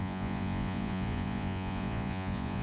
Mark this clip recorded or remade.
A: remade